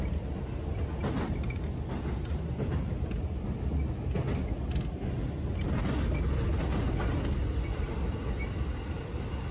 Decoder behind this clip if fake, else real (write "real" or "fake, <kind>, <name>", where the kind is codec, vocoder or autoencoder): real